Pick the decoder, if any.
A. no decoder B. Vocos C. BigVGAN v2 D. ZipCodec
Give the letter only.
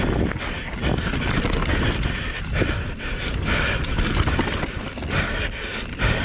A